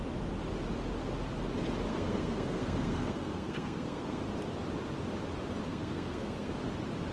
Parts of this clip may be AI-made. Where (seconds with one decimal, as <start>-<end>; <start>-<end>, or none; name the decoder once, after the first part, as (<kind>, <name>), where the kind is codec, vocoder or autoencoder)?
1.9-4.2 (codec, SNAC); 5.7-6.5